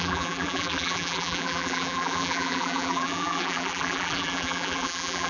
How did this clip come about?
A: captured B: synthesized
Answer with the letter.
B